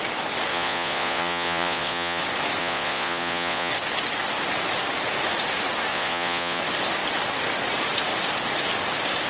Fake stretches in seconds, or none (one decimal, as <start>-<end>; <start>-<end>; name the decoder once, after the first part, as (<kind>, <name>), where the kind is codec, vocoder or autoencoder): 0.5-2.2 (vocoder, Vocos); 2.6-3.7; 5.9-6.6